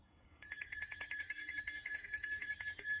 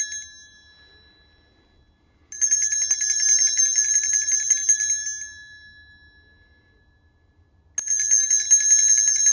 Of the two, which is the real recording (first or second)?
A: second